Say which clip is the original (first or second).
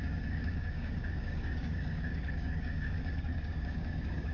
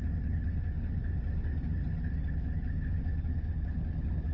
second